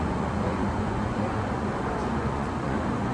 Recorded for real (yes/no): no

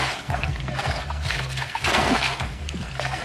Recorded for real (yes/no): no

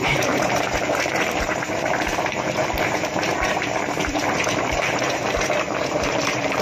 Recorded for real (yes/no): no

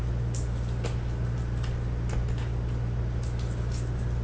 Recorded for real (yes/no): yes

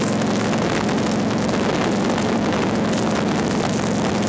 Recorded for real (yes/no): yes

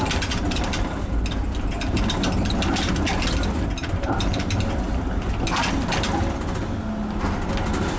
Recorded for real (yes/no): yes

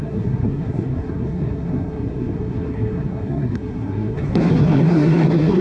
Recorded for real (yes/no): no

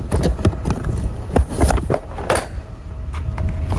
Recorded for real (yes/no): yes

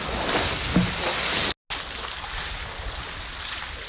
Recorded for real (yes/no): yes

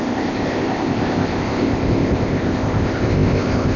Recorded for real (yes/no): no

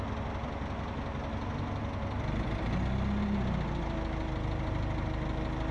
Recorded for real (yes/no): yes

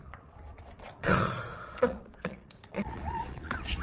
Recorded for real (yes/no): no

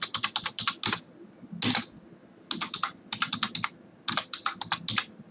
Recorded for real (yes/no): yes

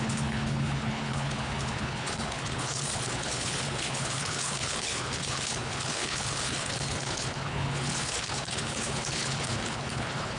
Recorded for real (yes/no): no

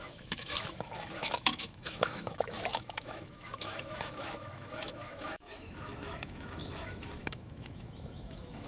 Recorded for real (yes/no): no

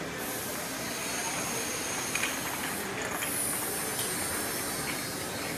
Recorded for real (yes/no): yes